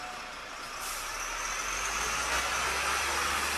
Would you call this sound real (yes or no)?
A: yes